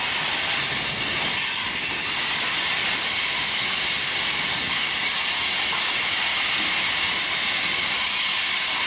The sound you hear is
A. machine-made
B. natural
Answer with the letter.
B